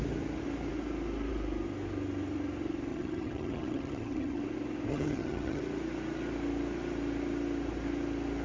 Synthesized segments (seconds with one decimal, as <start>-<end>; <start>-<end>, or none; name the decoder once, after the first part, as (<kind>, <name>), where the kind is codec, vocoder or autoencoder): 2.9-4.4 (vocoder, HiFi-GAN); 4.9-5.6